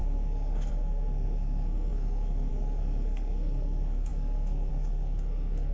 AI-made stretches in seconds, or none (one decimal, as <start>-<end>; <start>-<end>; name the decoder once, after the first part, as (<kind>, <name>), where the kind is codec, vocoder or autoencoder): 0.0-5.7 (codec, SNAC)